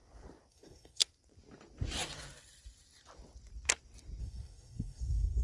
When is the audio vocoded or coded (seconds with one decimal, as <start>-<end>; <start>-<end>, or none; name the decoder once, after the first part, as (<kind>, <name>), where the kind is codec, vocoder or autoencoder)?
0.5-1.0 (codec, SNAC); 4.2-5.4